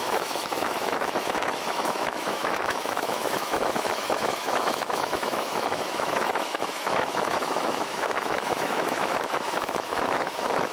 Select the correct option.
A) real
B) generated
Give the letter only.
B